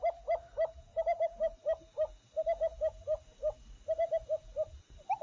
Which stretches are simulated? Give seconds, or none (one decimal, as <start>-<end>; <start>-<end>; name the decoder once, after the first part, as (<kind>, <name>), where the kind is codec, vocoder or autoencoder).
0.9-2.1 (vocoder, BigVGAN v2)